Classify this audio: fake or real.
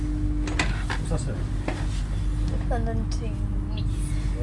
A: real